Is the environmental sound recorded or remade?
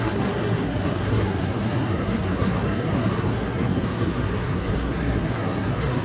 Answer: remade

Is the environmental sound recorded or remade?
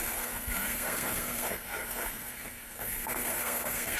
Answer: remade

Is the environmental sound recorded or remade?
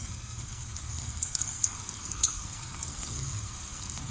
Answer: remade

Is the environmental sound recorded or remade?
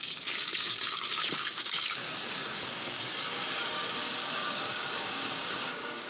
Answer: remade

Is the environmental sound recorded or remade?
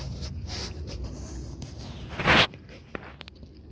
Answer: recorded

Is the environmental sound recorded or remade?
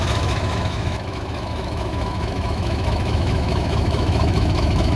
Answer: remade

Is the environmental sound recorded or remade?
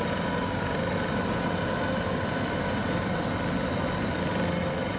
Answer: recorded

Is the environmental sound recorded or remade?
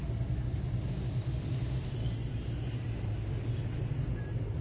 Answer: recorded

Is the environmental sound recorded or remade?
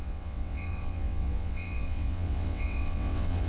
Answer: remade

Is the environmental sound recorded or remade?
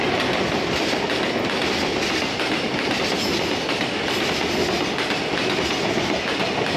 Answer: recorded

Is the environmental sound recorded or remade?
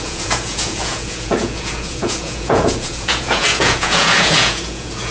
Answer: remade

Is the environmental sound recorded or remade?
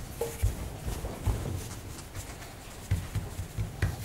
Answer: recorded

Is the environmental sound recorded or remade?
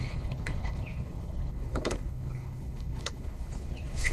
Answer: remade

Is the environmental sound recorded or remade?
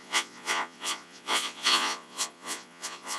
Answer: remade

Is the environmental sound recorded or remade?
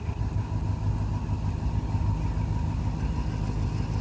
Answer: recorded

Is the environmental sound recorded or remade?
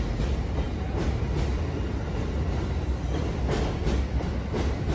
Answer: recorded